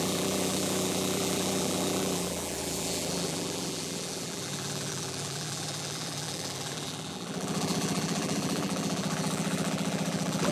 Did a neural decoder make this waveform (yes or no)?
yes